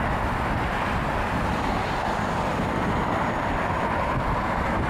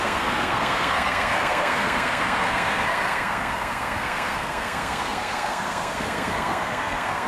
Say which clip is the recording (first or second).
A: first